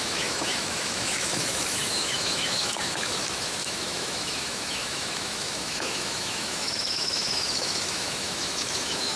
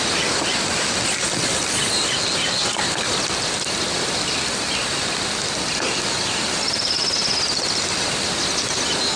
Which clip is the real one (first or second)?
second